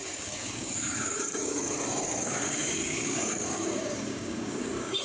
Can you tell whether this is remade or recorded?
remade